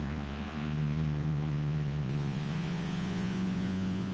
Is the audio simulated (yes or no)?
yes